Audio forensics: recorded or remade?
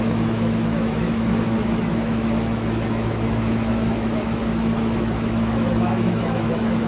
remade